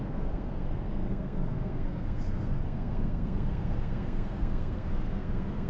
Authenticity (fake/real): fake